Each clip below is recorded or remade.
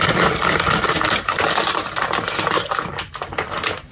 recorded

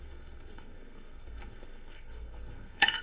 remade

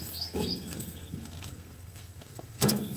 remade